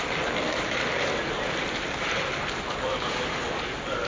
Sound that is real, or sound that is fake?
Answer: fake